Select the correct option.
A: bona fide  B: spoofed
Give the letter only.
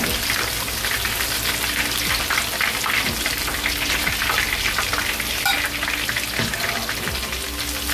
A